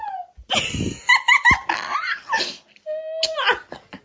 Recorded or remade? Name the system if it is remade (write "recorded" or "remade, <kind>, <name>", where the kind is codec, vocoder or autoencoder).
recorded